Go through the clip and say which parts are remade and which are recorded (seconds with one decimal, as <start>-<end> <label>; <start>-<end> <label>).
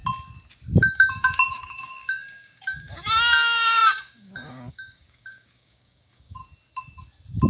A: 0.0-0.8 recorded; 0.8-6.4 remade; 6.4-7.5 recorded